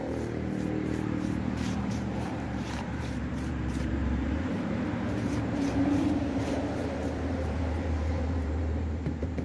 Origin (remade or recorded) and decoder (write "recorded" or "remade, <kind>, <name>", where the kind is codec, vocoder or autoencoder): remade, vocoder, BigVGAN v2